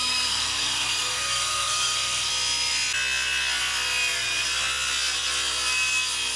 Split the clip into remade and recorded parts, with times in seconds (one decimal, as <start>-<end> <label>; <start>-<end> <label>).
0.0-2.3 remade; 2.3-6.4 recorded